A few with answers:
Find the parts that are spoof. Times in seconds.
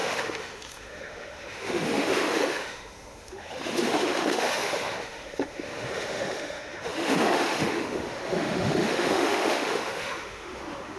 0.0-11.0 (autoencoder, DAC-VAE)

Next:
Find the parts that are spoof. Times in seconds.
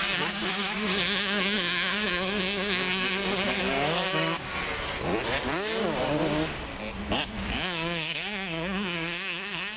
0.0-4.5 (codec, DAC); 7.4-9.8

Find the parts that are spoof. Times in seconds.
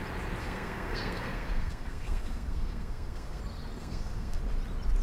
0.4-3.4 (codec, SNAC); 3.8-4.4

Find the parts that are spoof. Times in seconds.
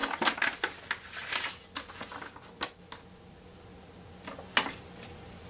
none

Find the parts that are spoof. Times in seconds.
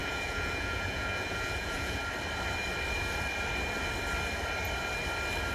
0.0-2.0 (vocoder, Vocos)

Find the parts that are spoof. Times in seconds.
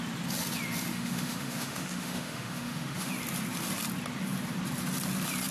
0.9-3.1 (autoencoder, DAC-VAE)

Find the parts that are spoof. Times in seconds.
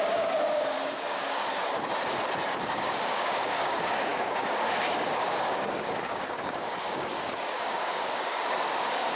0.0-1.4 (codec, DAC); 2.6-9.2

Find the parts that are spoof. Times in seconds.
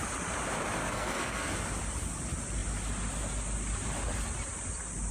0.8-1.5 (codec, SNAC)